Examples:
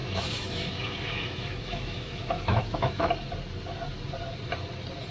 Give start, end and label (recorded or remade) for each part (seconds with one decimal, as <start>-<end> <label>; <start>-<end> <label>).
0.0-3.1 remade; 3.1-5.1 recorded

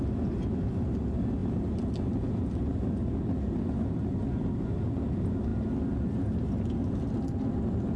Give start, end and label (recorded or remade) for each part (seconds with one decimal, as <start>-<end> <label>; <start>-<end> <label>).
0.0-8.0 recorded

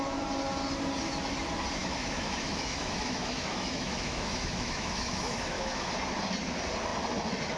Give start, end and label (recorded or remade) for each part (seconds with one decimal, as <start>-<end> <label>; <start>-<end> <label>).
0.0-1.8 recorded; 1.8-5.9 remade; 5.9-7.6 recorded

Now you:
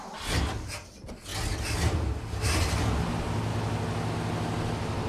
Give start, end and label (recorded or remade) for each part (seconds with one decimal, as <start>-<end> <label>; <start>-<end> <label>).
0.0-5.1 recorded